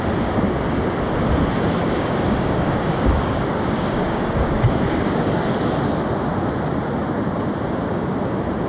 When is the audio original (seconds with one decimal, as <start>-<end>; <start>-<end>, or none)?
0.0-1.8; 5.5-8.7